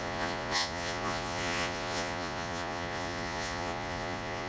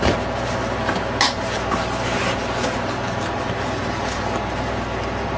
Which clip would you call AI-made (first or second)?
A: first